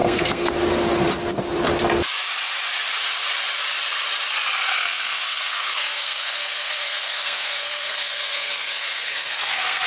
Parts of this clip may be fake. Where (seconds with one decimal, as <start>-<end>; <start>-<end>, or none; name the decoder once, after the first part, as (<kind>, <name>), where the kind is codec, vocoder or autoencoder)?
0.0-0.5 (codec, SNAC); 4.7-9.9